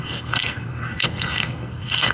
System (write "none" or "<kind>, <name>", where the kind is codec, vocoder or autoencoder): codec, SNAC